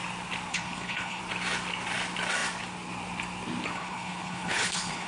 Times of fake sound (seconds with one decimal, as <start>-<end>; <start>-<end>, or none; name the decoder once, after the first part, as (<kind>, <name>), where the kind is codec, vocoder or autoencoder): 0.5-1.2 (codec, HILCodec); 3.7-5.1